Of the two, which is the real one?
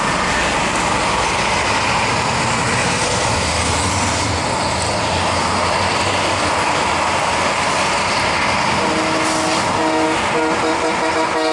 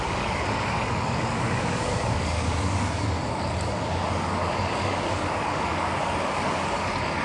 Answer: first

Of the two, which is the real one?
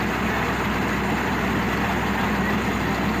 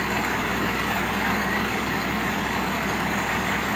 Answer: first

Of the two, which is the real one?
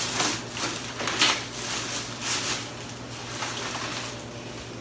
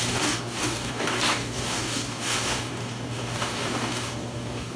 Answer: first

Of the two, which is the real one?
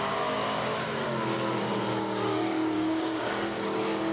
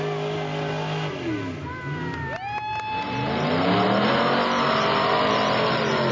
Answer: second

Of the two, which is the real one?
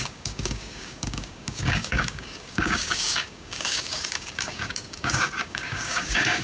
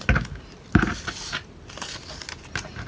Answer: second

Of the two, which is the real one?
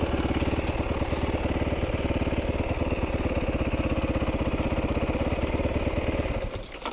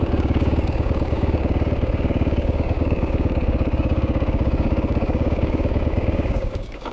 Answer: first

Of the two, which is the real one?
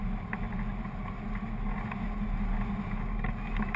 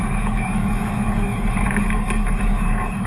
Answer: first